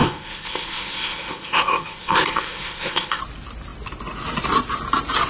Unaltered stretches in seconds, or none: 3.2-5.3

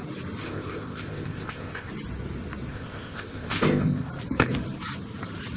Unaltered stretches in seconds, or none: 0.0-0.4; 1.9-2.7; 4.1-5.6

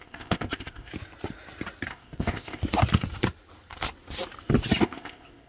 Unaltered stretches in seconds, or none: 0.9-1.9; 2.6-4.8